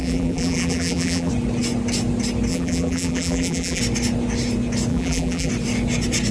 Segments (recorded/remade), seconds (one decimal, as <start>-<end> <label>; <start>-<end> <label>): 0.0-1.3 remade; 1.3-2.5 recorded; 2.5-3.8 remade; 3.8-4.9 recorded; 4.9-5.5 remade; 5.5-6.3 recorded